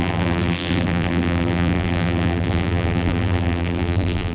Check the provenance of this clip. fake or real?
fake